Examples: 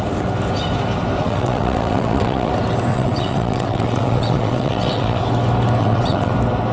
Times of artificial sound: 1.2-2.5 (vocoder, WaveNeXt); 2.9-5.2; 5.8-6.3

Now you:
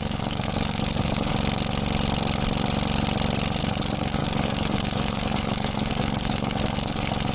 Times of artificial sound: 0.0-1.3 (codec, DAC); 3.6-7.3

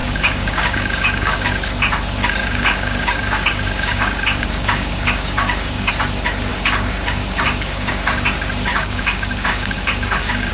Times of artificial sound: 0.0-1.5 (codec, DAC); 2.4-5.9; 6.5-7.9; 8.7-10.5

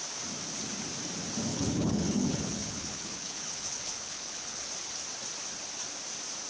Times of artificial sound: 1.5-4.7 (codec, HILCodec)

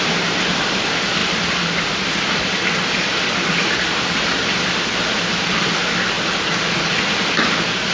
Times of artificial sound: 1.2-5.9 (vocoder, BigVGAN v2)